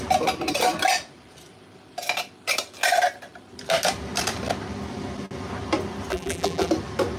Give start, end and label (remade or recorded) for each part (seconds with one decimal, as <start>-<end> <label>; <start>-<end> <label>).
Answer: 0.0-6.1 recorded; 6.1-6.7 remade; 6.7-7.2 recorded